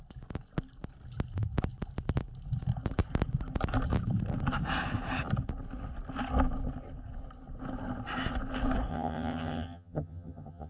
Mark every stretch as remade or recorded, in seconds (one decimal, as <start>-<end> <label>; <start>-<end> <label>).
0.0-8.9 recorded; 8.9-10.7 remade

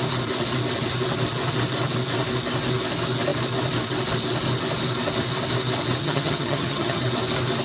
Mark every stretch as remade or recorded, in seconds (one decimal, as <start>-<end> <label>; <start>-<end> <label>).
0.0-6.0 recorded; 6.0-7.0 remade; 7.0-7.6 recorded

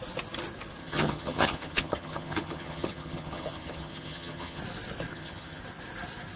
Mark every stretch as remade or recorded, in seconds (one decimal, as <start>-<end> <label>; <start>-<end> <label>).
0.0-0.8 recorded; 0.8-4.6 remade; 4.6-5.1 recorded; 5.1-5.6 remade; 5.6-6.4 recorded

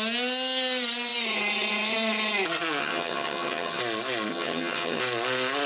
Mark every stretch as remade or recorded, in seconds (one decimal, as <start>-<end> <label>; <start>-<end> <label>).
0.0-2.8 recorded; 2.8-3.8 remade; 3.8-4.3 recorded; 4.3-5.0 remade; 5.0-5.7 recorded

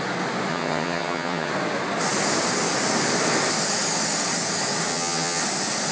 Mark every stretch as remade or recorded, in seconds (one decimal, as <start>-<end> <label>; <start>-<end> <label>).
0.0-0.5 recorded; 0.5-1.5 remade; 1.5-4.9 recorded; 4.9-5.4 remade; 5.4-5.9 recorded